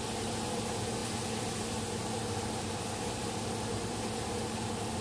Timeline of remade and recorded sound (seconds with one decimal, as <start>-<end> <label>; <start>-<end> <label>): 0.0-5.0 recorded